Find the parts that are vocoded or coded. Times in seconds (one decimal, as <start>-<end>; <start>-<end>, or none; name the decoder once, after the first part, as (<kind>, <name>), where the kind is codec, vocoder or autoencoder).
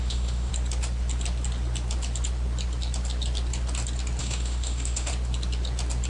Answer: 0.0-0.5 (autoencoder, DAC-VAE); 4.2-5.1